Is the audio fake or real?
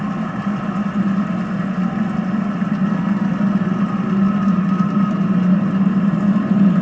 real